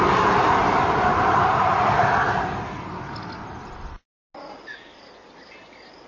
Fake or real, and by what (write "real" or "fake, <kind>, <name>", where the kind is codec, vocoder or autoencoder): real